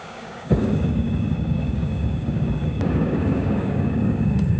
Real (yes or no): no